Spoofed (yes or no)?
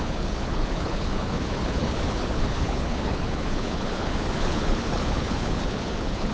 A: yes